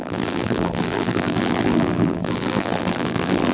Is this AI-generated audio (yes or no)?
yes